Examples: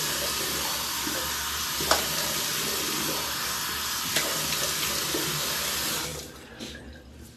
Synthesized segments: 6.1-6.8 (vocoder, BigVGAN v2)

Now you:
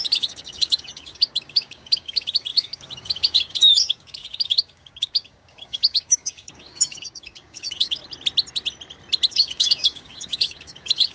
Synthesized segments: 0.0-8.0 (codec, DAC); 9.3-11.1

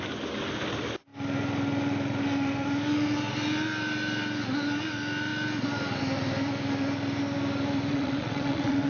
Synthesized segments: 7.9-8.9 (vocoder, WaveNeXt)

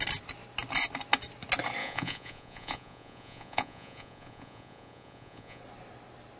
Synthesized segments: 1.8-5.6 (vocoder, Vocos)

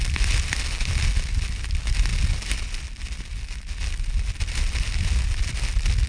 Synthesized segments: none